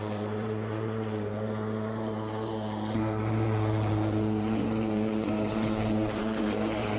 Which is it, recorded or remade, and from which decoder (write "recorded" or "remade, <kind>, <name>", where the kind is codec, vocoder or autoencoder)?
remade, vocoder, Vocos